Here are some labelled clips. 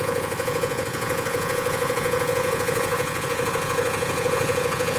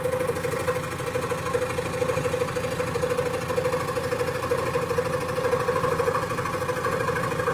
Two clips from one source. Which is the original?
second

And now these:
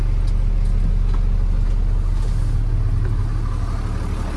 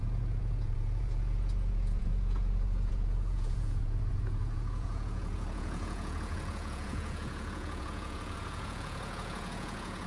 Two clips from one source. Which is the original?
first